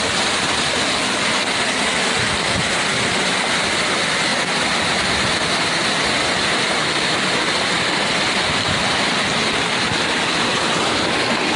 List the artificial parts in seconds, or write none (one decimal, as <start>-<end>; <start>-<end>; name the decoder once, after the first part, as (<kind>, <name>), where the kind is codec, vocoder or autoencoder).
none